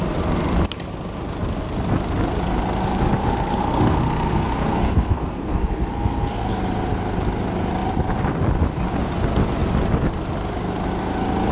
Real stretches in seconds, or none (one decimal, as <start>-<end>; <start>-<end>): 0.0-3.3; 6.5-11.5